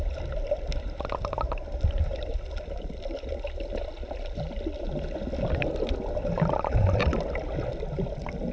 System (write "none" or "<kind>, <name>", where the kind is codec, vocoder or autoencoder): none